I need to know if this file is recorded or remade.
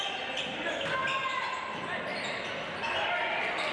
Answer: recorded